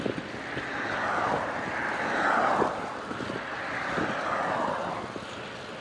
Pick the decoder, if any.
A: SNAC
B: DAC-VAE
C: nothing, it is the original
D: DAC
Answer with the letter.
C